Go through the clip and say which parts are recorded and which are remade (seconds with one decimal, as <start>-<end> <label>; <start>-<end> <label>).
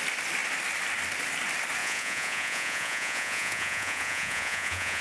0.0-1.8 recorded; 1.8-5.0 remade